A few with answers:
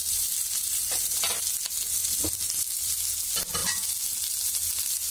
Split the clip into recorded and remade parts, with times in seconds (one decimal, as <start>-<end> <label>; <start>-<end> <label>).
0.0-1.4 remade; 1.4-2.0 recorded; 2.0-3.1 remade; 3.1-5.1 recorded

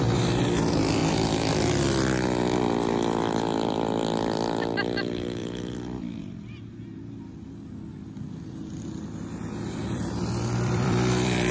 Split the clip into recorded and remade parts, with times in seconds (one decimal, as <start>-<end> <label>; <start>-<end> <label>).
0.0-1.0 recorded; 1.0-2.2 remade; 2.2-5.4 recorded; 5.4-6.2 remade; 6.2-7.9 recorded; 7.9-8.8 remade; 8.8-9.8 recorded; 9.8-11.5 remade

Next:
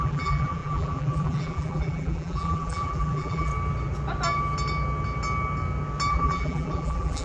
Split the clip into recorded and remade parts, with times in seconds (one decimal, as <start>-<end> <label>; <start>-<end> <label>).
0.0-3.5 remade; 3.5-6.1 recorded; 6.1-7.2 remade